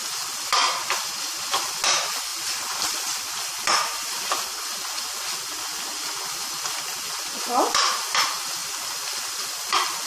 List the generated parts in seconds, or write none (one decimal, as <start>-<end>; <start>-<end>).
2.3-3.4